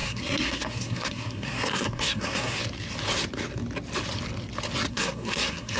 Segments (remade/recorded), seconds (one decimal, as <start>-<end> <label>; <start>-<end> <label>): 0.0-2.6 remade; 2.6-4.9 recorded; 4.9-5.8 remade